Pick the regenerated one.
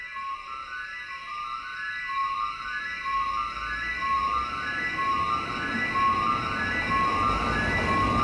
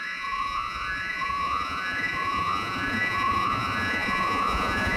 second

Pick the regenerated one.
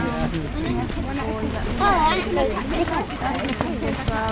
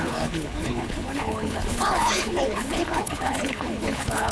second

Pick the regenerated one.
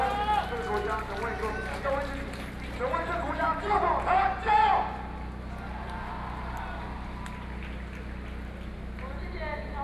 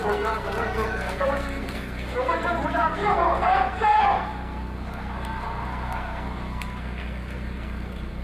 second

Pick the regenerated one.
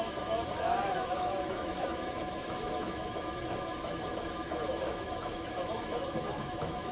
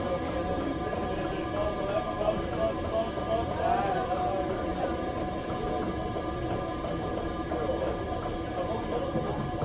first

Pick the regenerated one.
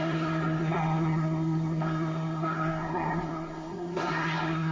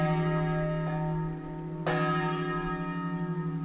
first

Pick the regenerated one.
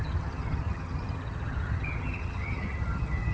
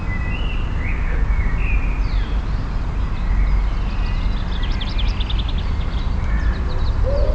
first